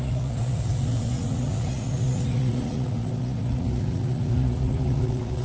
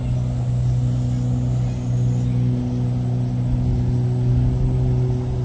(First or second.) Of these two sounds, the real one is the second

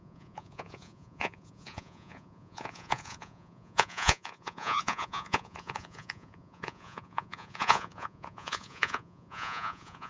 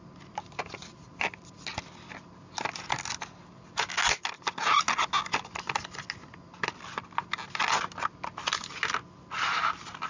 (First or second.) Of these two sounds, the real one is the second